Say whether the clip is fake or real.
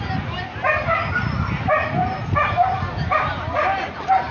fake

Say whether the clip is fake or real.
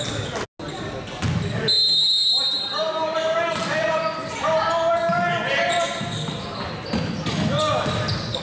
real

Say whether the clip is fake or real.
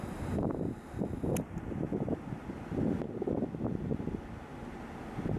real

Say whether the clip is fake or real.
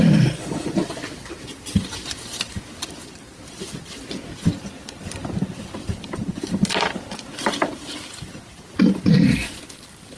fake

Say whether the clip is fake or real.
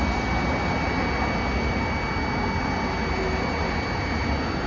real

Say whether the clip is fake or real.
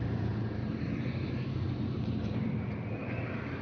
fake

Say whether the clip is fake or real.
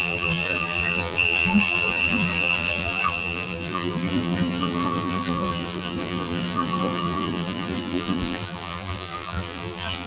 fake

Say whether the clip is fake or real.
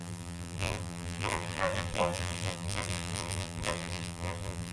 fake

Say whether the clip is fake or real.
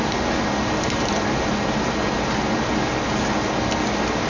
real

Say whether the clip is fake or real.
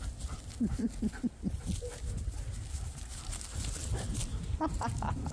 real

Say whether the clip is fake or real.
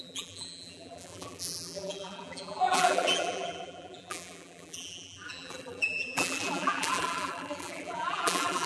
fake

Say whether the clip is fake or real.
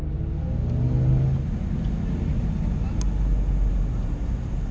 real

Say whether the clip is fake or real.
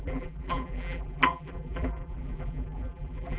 fake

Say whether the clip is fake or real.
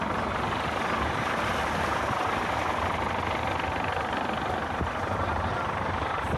real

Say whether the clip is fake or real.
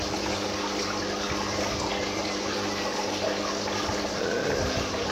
real